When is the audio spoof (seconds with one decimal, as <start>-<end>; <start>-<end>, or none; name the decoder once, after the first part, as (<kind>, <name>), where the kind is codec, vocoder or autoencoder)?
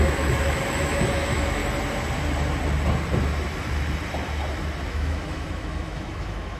0.0-1.6 (autoencoder, DAC-VAE); 4.9-6.6